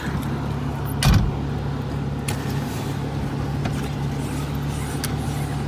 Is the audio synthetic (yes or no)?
no